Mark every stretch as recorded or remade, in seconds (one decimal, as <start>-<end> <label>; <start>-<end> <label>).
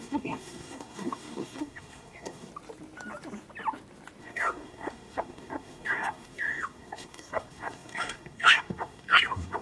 0.0-2.5 remade; 2.5-4.2 recorded; 4.2-9.6 remade